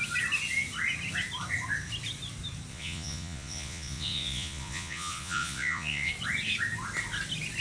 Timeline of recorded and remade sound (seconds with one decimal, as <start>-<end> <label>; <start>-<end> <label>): 0.0-2.7 recorded; 2.7-6.1 remade; 6.1-7.6 recorded